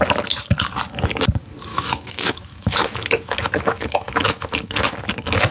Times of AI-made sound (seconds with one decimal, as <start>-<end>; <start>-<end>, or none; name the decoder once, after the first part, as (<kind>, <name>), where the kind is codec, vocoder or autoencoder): 1.7-5.0 (autoencoder, DAC-VAE)